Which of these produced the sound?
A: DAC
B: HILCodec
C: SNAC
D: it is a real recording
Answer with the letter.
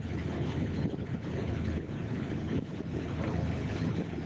B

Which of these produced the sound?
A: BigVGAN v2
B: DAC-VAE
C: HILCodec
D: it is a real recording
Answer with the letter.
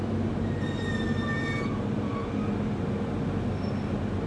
D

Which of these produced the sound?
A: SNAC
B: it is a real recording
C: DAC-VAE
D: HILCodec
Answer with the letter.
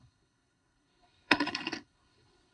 D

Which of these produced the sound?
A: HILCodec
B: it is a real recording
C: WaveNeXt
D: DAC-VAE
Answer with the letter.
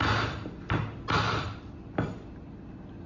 B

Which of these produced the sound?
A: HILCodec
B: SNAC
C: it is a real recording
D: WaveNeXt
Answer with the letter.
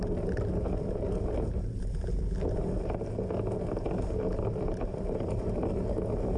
C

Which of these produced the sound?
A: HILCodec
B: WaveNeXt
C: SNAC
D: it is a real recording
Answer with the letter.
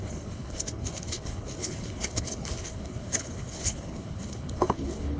A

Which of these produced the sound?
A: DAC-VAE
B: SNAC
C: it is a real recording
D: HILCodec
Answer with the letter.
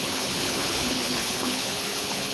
D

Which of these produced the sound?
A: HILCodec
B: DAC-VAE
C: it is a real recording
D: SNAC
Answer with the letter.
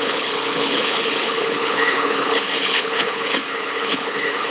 A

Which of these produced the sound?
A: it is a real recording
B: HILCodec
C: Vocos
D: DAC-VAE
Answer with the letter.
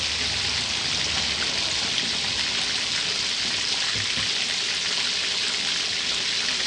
A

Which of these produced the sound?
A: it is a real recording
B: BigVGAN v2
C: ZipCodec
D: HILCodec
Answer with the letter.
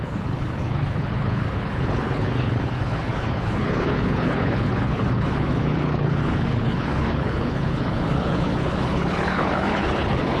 D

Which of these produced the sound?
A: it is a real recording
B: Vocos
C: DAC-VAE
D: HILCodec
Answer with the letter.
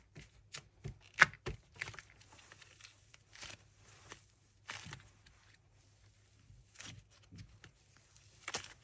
A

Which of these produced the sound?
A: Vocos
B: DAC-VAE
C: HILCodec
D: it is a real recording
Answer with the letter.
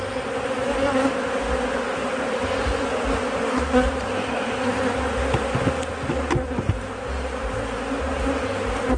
D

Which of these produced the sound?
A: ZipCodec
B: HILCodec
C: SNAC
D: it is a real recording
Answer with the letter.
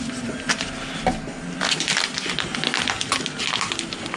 D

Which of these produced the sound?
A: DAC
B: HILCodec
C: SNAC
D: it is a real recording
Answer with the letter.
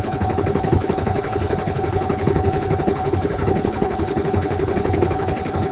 B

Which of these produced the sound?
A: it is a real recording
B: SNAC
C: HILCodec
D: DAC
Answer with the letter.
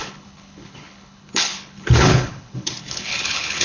C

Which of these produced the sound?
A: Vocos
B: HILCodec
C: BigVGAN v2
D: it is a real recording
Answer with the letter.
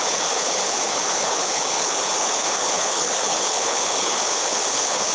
B